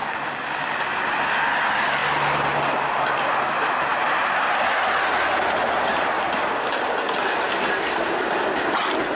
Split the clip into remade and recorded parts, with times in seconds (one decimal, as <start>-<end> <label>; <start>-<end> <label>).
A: 0.0-9.2 recorded